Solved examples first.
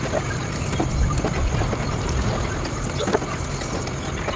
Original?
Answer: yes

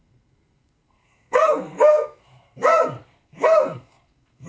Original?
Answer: no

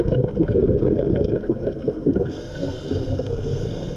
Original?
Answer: no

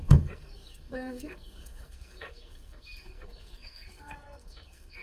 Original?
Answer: no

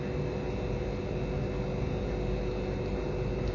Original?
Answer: yes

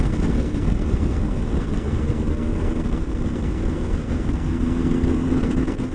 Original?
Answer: no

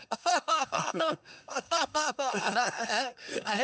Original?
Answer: no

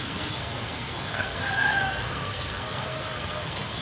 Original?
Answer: no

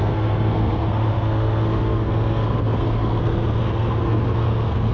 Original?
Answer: no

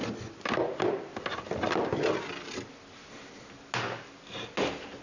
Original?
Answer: yes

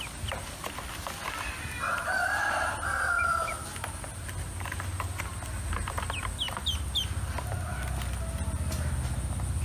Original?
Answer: yes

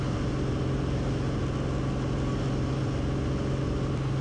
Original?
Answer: yes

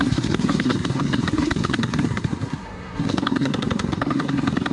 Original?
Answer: no